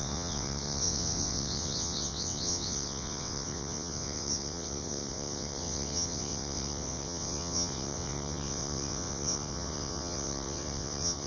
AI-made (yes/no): yes